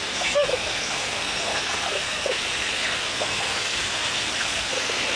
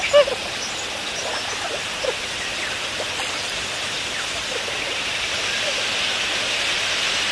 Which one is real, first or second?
second